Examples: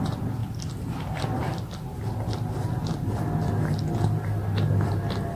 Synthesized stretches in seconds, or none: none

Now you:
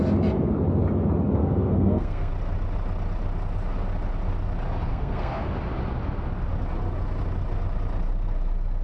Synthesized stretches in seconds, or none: 1.4-2.3; 4.9-5.5